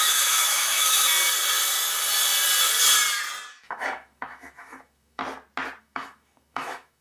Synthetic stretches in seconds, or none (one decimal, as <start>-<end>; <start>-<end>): 0.0-1.1; 3.5-5.2; 5.8-7.0